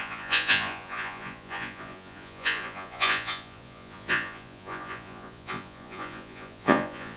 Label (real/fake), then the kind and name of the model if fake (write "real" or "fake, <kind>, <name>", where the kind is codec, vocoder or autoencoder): fake, vocoder, Vocos